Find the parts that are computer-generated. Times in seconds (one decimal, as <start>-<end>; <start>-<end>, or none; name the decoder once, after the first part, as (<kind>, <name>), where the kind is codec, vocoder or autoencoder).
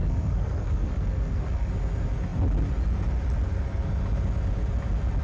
0.0-1.7 (codec, SNAC)